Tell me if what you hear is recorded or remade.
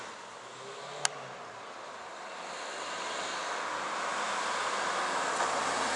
recorded